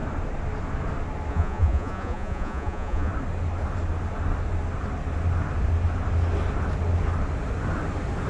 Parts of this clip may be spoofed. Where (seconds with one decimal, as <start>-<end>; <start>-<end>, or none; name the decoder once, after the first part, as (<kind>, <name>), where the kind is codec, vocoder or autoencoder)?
1.3-3.1 (vocoder, Vocos)